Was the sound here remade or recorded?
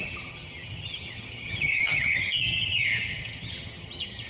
remade